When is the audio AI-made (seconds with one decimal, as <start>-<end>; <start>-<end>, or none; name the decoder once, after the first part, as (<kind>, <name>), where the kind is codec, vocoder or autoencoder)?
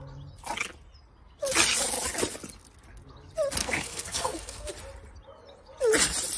3.6-4.7 (codec, SNAC)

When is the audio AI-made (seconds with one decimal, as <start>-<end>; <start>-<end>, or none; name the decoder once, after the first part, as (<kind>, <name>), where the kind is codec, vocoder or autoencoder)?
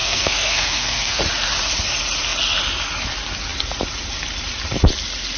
0.0-1.2 (codec, SNAC)